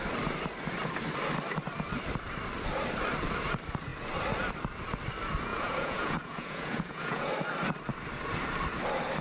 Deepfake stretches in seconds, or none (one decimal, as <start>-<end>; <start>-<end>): 5.5-7.3